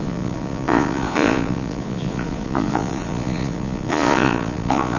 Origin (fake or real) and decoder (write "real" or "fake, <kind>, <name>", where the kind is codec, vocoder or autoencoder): fake, vocoder, Vocos